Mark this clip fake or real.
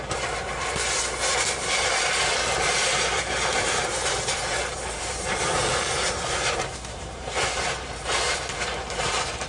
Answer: fake